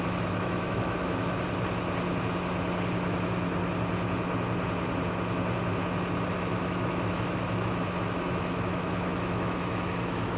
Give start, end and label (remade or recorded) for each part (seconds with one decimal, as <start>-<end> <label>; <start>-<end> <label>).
0.0-1.3 remade; 1.3-6.3 recorded; 6.3-10.4 remade

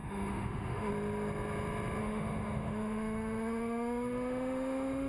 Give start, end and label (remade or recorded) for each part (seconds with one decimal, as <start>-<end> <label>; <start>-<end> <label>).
0.0-0.9 remade; 0.9-2.0 recorded; 2.0-5.1 remade

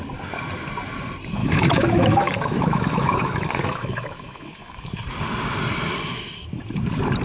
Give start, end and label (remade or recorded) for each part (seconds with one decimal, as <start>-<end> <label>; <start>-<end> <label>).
0.0-1.4 recorded; 1.4-4.9 remade; 4.9-7.2 recorded

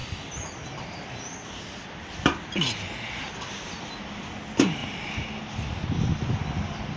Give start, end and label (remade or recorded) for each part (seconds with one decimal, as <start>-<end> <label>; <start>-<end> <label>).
0.0-7.0 recorded

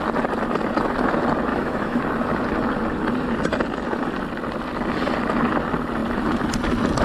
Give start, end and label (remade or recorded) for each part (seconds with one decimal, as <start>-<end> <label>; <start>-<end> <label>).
0.0-1.5 recorded; 1.5-2.0 remade; 2.0-7.0 recorded

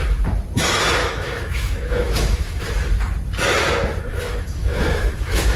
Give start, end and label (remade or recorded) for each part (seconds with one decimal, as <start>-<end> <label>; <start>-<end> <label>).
0.0-1.0 recorded; 1.0-2.6 remade; 2.6-4.1 recorded; 4.1-5.6 remade

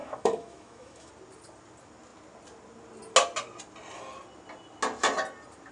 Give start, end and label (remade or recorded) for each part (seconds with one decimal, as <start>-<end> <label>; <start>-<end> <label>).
0.0-1.1 remade; 1.1-5.7 recorded

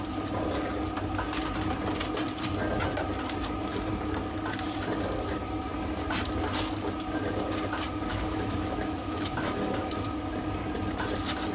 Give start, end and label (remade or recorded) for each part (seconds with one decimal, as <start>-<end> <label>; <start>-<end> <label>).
0.0-8.1 recorded; 8.1-9.9 remade; 9.9-11.5 recorded